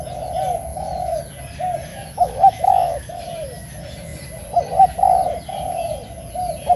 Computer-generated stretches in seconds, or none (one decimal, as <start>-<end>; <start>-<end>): 0.7-1.2; 1.9-3.2